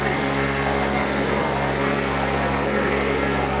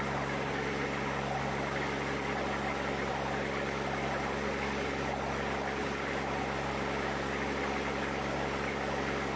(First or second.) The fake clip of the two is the first